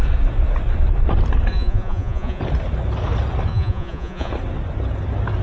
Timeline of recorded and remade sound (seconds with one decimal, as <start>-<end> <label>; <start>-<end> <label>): 0.0-1.5 recorded; 1.5-2.4 remade; 2.4-3.5 recorded; 3.5-4.3 remade; 4.3-5.4 recorded